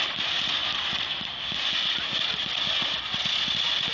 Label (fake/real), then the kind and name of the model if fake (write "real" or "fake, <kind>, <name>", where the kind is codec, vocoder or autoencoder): real